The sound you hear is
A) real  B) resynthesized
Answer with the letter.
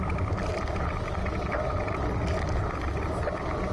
A